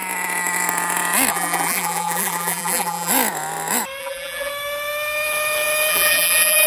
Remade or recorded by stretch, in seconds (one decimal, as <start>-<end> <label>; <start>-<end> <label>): 0.0-1.3 recorded; 1.3-3.1 remade; 3.1-4.0 recorded; 4.0-4.5 remade; 4.5-5.9 recorded; 5.9-6.7 remade